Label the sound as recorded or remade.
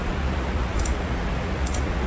remade